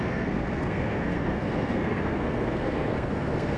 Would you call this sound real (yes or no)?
no